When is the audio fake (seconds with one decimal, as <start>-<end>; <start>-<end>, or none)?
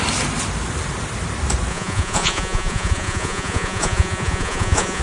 1.7-5.0